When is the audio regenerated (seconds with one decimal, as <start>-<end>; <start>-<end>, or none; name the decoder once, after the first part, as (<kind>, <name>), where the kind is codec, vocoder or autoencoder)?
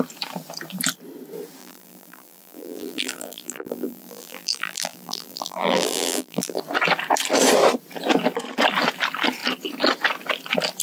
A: 1.6-6.6 (vocoder, BigVGAN v2)